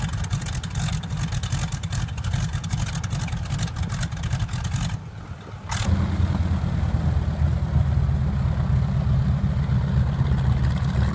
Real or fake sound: real